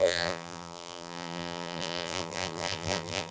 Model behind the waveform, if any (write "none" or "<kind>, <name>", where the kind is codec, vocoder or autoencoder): vocoder, BigVGAN v2